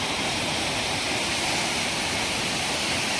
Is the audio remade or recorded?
recorded